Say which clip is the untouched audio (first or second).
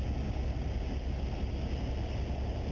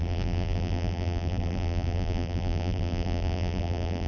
first